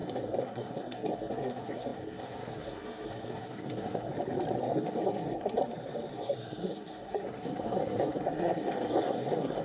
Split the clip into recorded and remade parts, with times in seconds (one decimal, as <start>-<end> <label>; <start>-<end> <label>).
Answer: 0.0-4.1 remade; 4.1-4.6 recorded; 4.6-5.6 remade; 5.6-6.1 recorded; 6.1-9.6 remade